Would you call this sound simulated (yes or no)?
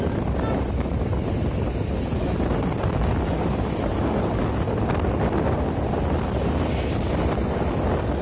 no